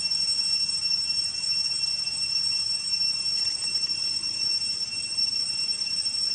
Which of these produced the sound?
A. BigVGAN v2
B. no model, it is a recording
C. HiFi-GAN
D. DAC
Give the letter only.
A